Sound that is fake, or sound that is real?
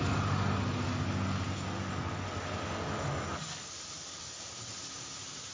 real